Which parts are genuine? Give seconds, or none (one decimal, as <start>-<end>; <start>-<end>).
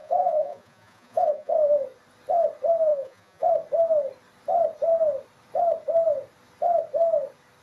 1.5-2.9; 3.5-7.6